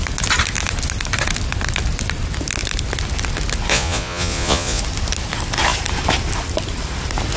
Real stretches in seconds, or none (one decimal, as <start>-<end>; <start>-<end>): 0.0-3.7; 4.8-7.4

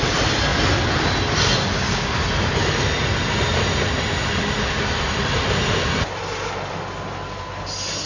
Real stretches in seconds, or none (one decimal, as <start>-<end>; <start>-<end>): 0.0-8.1

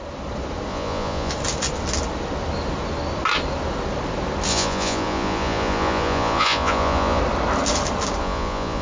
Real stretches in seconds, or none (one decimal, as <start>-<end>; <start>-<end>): 0.0-0.7; 1.3-4.5; 7.2-8.2

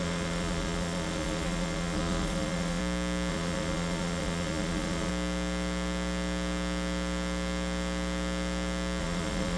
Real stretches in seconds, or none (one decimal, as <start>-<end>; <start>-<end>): 2.8-3.3; 5.1-9.0